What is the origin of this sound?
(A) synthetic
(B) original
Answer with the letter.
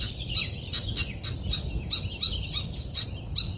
B